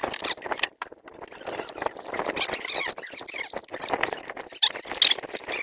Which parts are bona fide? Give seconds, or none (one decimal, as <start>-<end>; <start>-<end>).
0.0-5.6